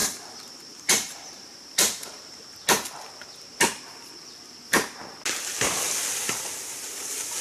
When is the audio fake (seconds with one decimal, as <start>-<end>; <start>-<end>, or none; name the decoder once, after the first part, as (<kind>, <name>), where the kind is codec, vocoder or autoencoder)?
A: 0.0-2.4 (vocoder, BigVGAN v2)